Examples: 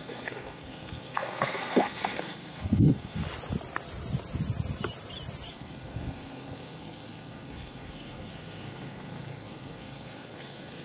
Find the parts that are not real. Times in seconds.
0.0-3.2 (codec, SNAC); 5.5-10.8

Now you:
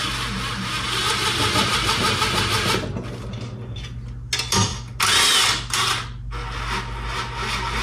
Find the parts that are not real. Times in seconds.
none

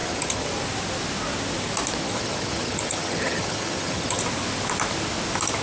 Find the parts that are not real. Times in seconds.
0.0-0.5 (vocoder, HiFi-GAN); 2.0-4.2

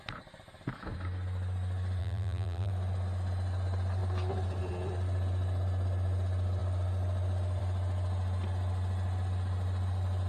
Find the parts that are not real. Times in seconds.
2.0-2.7 (vocoder, BigVGAN v2)

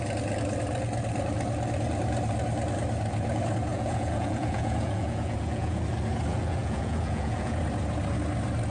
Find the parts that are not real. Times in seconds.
3.7-5.8 (vocoder, Vocos); 6.3-7.6